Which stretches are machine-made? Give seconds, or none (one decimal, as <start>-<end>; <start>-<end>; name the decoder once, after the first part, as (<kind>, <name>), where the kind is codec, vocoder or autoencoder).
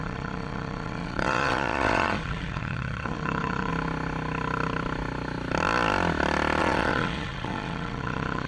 0.0-3.7 (vocoder, Vocos); 6.6-8.5